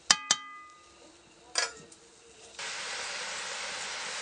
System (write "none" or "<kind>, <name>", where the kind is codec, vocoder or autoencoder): none